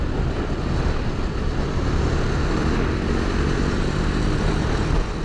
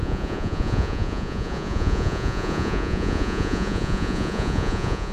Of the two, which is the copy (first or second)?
second